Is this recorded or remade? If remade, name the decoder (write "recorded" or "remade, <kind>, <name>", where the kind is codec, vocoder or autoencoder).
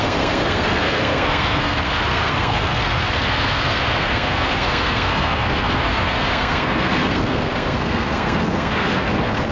remade, codec, SNAC